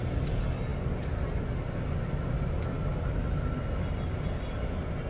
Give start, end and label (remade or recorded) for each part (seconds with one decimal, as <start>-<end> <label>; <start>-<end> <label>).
0.0-5.1 recorded